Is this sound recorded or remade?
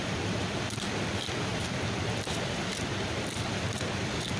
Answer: remade